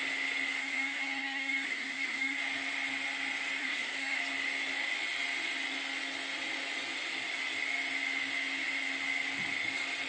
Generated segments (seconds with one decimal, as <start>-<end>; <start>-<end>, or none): 0.6-2.4; 3.6-4.2